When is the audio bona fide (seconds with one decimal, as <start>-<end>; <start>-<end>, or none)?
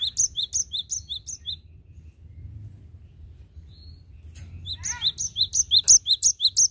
0.0-6.7